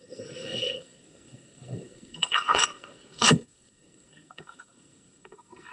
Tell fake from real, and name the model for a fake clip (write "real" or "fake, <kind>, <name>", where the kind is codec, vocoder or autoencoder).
fake, codec, SNAC